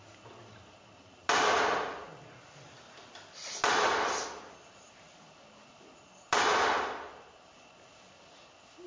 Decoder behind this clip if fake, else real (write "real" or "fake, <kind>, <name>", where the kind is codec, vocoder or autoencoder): real